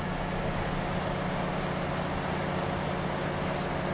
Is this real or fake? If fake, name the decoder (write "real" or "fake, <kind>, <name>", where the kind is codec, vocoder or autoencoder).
real